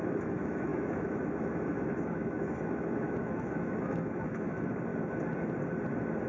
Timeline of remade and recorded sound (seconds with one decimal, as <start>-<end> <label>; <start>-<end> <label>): 0.0-4.9 remade; 4.9-6.3 recorded